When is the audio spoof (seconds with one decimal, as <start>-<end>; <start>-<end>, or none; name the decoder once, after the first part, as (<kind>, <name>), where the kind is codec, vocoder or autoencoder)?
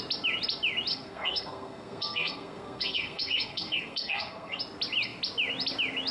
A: 0.9-4.6 (codec, SNAC)